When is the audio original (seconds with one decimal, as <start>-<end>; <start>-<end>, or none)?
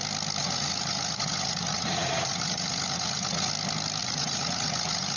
0.0-0.4; 3.5-4.0